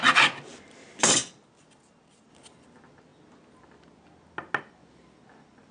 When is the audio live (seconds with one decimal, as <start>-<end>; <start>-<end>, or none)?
0.0-5.7